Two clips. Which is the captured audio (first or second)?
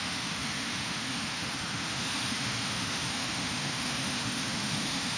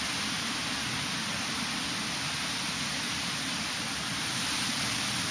second